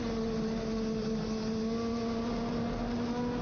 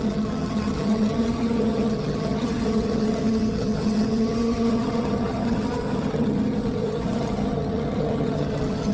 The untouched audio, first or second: first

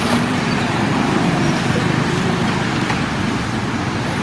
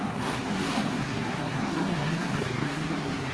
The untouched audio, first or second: first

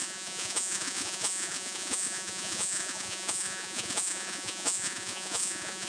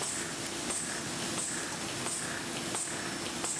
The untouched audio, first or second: second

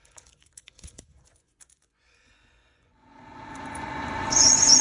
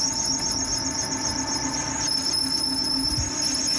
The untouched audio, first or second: second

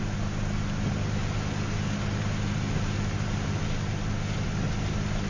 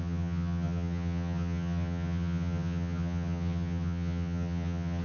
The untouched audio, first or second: first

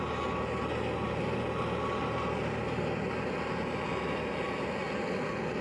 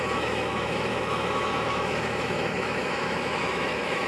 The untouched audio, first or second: first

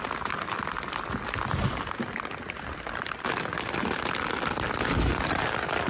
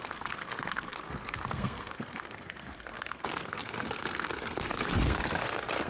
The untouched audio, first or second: first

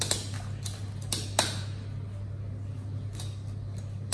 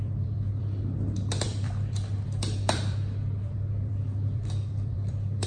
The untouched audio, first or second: first